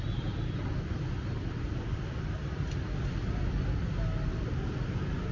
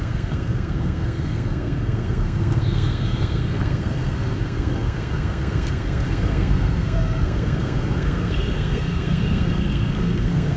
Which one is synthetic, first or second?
second